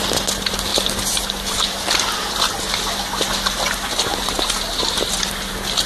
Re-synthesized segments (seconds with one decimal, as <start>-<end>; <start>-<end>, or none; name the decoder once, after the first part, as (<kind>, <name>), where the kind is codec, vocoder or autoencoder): none

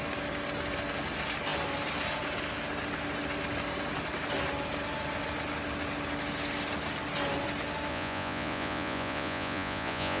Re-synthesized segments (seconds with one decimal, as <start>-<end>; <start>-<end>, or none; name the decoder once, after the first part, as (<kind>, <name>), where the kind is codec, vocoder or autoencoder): 7.9-10.2 (vocoder, Vocos)

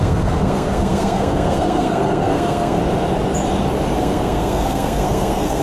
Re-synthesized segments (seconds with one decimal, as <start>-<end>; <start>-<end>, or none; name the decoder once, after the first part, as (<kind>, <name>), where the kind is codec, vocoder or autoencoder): 0.0-2.8 (codec, SNAC); 4.0-5.6

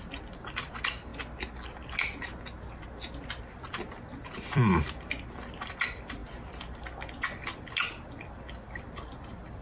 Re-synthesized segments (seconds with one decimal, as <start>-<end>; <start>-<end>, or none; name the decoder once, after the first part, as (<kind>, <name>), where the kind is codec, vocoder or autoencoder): 0.0-1.1 (vocoder, BigVGAN v2); 3.4-9.6

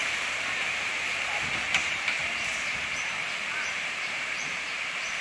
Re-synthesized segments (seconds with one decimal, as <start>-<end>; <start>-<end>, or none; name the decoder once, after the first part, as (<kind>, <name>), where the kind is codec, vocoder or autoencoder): 0.0-1.4 (vocoder, BigVGAN v2); 1.8-5.2